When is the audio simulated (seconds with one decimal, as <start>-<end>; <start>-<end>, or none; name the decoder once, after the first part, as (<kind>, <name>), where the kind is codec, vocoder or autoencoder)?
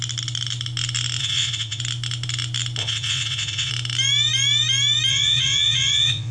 1.2-1.8 (vocoder, WaveNeXt); 2.8-3.7; 5.1-6.3